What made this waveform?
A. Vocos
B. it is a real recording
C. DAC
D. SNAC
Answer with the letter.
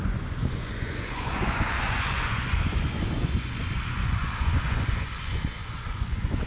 A